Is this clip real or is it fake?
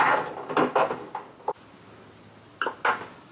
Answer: real